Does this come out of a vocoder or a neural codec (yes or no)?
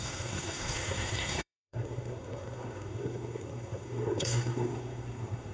yes